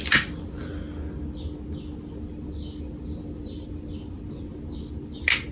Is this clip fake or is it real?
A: real